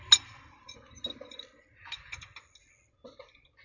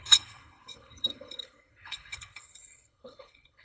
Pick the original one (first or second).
first